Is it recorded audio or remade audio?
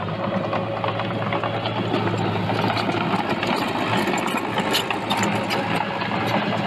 recorded